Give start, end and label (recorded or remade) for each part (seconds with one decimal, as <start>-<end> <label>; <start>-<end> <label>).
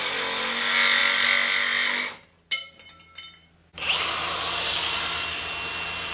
0.0-6.1 recorded